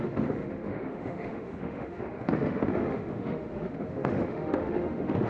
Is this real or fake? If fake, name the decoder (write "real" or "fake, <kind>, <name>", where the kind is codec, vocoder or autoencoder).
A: fake, autoencoder, DAC-VAE